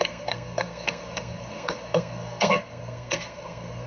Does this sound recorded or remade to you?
remade